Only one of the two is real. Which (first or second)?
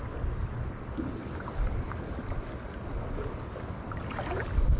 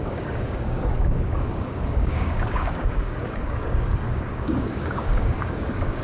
first